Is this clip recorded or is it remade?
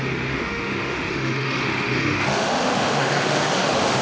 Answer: remade